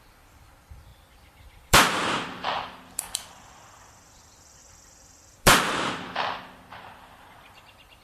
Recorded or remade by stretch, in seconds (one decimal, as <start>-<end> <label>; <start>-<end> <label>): 0.0-8.0 remade